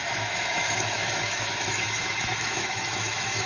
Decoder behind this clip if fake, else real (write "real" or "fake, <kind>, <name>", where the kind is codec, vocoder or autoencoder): fake, autoencoder, DAC-VAE